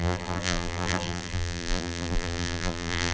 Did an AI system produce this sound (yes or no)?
yes